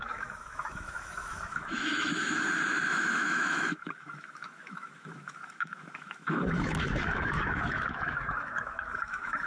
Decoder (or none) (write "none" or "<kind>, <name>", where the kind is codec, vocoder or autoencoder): autoencoder, DAC-VAE